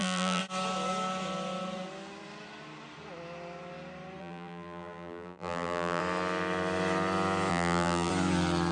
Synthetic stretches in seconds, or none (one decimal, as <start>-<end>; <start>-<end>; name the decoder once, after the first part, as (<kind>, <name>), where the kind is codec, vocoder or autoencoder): 0.0-0.4 (vocoder, BigVGAN v2); 4.2-6.0; 7.5-8.1